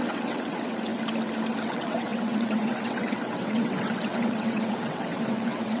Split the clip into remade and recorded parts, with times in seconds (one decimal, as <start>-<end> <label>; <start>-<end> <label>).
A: 0.0-0.9 remade; 0.9-1.6 recorded; 1.6-5.8 remade